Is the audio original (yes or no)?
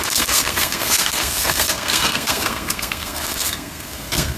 no